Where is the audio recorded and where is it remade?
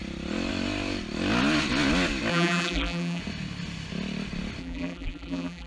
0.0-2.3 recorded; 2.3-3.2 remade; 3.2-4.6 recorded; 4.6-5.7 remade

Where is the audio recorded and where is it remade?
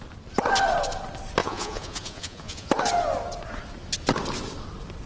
0.0-1.4 recorded; 1.4-2.7 remade; 2.7-5.1 recorded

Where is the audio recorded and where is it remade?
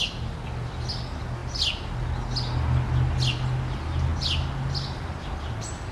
0.0-5.9 recorded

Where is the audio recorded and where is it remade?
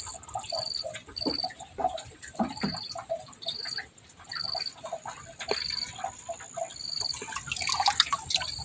0.0-8.6 recorded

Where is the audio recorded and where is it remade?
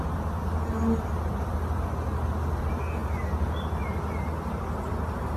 0.0-5.4 recorded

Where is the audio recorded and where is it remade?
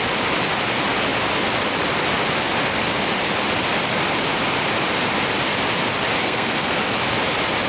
0.0-6.2 recorded; 6.2-6.8 remade; 6.8-7.7 recorded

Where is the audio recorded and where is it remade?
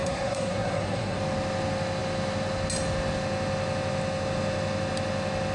0.0-1.2 remade; 1.2-5.5 recorded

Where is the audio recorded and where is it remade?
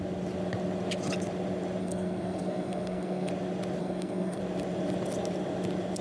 0.0-1.8 recorded; 1.8-3.3 remade; 3.3-3.8 recorded; 3.8-4.4 remade; 4.4-6.0 recorded